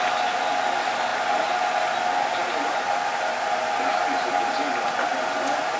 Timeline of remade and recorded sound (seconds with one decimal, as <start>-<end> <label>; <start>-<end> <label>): 0.0-5.8 recorded